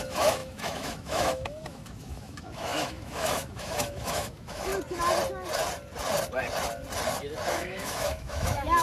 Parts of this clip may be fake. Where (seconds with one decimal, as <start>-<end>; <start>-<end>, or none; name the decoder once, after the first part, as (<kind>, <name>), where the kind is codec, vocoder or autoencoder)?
0.0-4.7 (autoencoder, DAC-VAE); 7.5-8.8